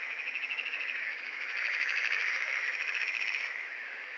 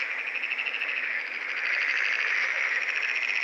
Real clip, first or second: second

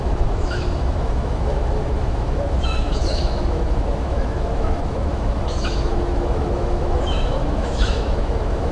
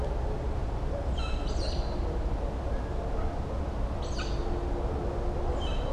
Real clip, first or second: second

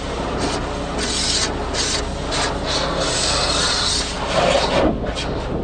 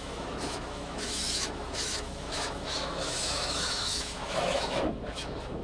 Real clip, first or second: first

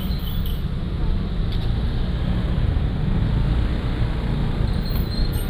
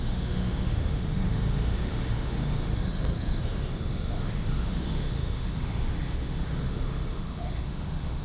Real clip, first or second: first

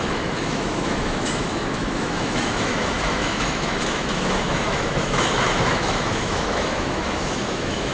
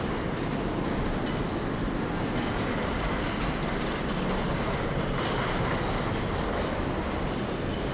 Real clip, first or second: second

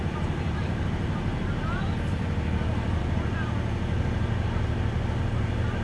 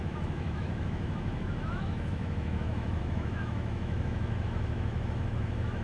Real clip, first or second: first